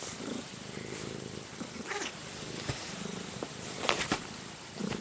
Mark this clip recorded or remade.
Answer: recorded